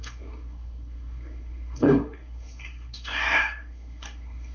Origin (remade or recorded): remade